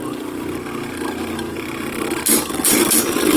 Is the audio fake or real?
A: real